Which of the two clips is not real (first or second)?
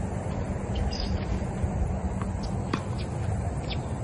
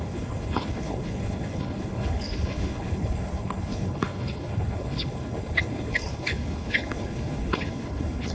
second